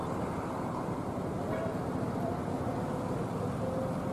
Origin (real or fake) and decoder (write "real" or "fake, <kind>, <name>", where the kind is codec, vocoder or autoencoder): real